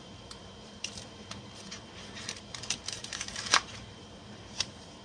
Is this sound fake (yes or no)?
yes